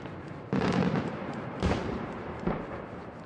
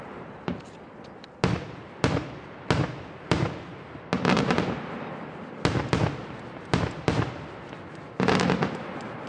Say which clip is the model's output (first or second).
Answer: first